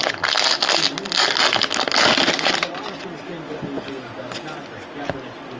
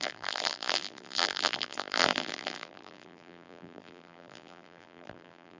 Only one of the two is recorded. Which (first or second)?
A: first